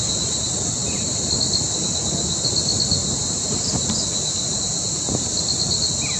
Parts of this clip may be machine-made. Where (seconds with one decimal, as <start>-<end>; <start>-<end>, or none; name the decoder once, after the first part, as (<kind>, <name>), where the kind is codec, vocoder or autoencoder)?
3.0-3.9 (vocoder, BigVGAN v2)